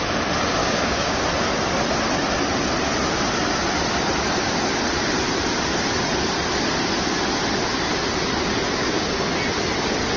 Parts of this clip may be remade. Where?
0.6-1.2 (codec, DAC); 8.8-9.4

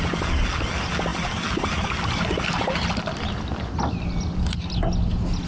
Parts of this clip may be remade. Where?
none